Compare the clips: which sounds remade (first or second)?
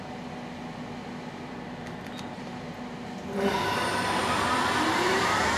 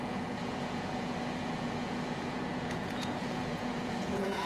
second